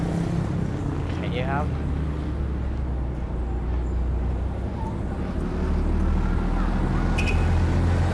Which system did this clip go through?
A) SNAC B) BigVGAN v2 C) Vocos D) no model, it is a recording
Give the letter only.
D